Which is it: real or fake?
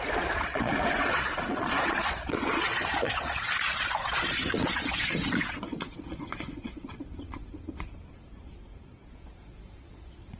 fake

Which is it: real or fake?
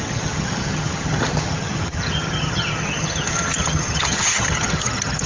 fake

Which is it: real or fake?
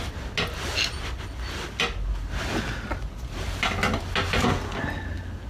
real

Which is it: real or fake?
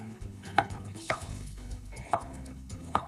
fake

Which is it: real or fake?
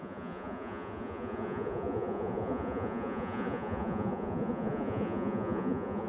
fake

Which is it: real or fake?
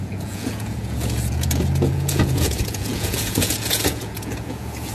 fake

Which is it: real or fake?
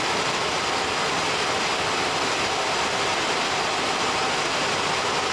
real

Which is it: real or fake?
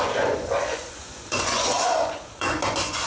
fake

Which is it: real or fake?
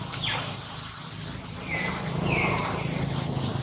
real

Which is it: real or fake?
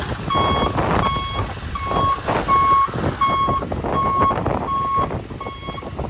real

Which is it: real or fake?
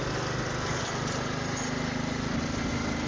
real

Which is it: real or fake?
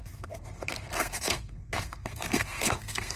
fake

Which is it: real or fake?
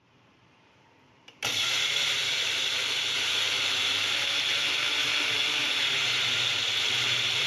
fake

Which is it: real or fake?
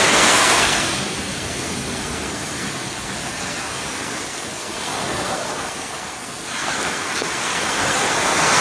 fake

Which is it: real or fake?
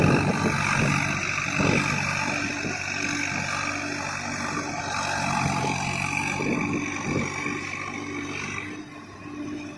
real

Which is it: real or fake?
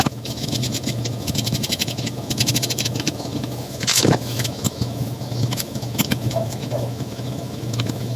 fake